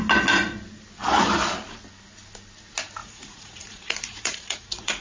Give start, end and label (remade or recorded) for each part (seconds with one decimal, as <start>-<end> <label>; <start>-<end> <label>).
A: 0.0-3.0 recorded; 3.0-5.0 remade